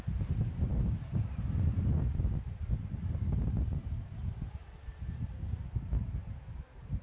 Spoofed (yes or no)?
yes